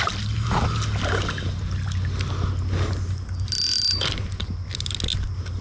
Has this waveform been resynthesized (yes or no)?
no